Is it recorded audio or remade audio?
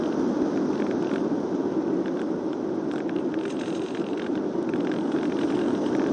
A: recorded